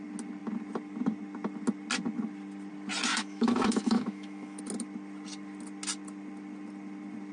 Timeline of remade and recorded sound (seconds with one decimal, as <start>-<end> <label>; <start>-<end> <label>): 0.0-3.1 recorded; 3.1-4.6 remade; 4.6-7.3 recorded